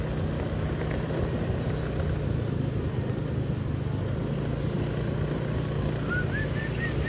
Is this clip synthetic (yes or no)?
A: no